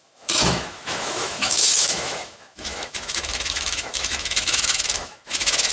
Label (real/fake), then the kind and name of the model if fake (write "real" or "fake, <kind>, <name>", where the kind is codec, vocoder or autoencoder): fake, autoencoder, DAC-VAE